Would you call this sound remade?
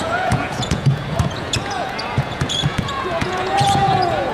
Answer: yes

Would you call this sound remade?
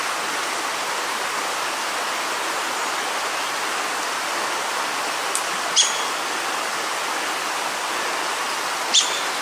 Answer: no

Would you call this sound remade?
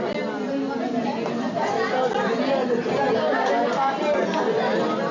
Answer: no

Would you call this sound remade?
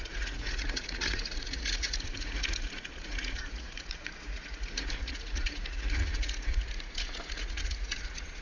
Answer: yes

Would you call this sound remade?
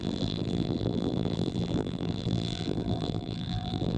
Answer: yes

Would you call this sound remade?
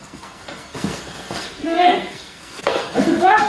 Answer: yes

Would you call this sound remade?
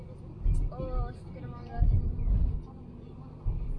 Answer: no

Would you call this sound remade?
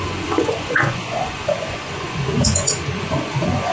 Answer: yes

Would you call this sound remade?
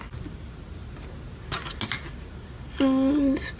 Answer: no